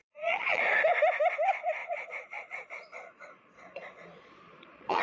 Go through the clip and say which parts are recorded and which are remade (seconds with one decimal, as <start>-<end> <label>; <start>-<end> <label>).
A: 0.0-0.6 remade; 0.6-1.8 recorded; 1.8-5.0 remade